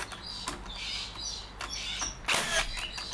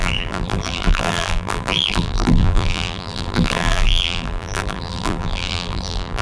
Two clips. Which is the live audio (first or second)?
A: first